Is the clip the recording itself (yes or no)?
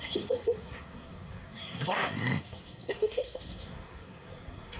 no